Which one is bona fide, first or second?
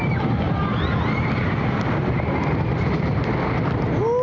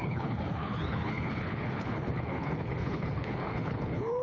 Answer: first